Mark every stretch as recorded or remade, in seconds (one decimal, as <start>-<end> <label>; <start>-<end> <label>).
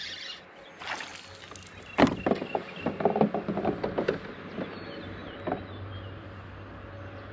0.0-7.3 recorded